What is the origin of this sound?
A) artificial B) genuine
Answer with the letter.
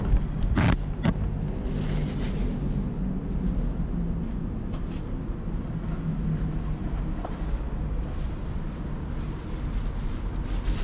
B